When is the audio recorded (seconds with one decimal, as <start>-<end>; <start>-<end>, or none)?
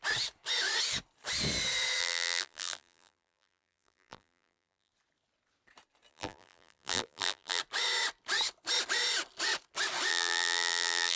0.0-2.0; 4.9-6.1; 7.6-10.1